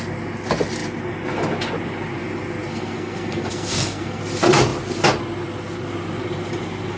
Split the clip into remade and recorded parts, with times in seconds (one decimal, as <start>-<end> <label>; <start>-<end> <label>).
0.0-2.7 recorded; 2.7-4.2 remade; 4.2-7.0 recorded